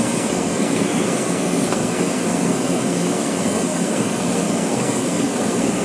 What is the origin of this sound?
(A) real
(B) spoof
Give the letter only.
B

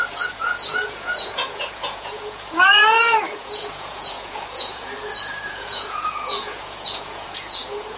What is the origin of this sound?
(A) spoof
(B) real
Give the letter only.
A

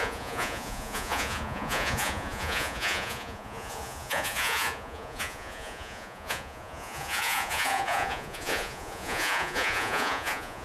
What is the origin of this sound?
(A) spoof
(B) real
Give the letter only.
A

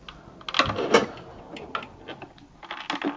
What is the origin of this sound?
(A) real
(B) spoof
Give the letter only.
A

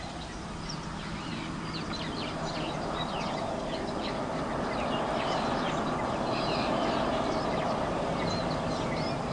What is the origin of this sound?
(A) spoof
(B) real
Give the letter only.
B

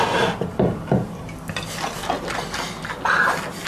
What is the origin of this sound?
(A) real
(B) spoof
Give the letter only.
A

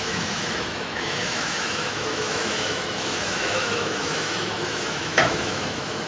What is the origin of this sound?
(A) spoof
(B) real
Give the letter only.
A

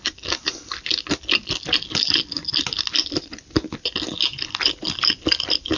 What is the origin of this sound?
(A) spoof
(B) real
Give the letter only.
B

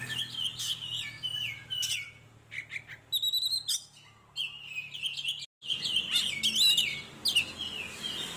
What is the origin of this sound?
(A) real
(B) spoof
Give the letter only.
A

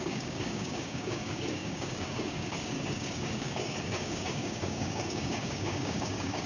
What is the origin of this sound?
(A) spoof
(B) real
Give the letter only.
A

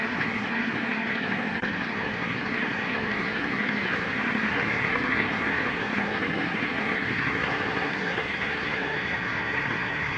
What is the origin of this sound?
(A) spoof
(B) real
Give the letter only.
A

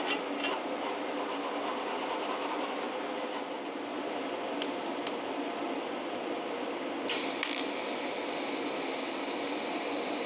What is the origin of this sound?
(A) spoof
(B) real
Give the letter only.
B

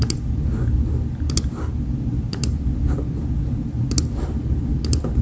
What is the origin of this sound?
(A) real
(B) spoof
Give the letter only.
A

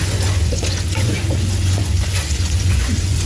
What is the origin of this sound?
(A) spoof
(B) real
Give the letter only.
A